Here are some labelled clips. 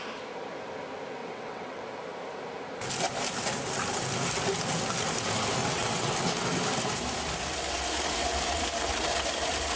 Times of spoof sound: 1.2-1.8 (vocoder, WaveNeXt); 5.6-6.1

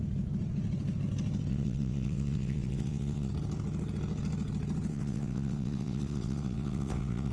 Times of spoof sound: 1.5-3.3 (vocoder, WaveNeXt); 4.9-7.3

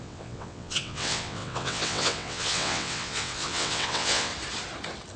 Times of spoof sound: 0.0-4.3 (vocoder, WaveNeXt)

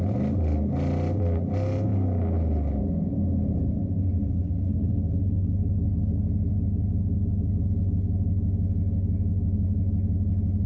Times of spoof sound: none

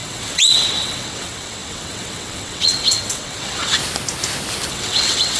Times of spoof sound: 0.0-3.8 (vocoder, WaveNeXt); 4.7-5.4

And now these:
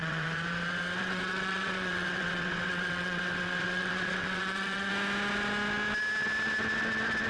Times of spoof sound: 0.0-4.9 (vocoder, WaveNeXt)